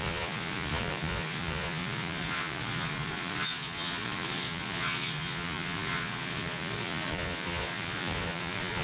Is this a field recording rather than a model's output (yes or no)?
no